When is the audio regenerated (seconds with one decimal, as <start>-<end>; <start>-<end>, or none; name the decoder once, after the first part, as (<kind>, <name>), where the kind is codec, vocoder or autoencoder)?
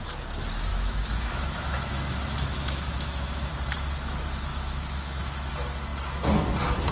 0.7-3.5 (autoencoder, DAC-VAE); 4.5-5.5